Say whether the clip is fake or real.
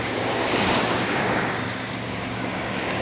fake